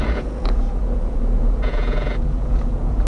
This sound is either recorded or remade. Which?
remade